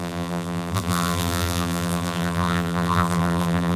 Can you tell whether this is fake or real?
fake